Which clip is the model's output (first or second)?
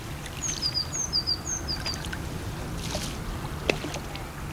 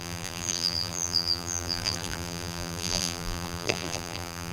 second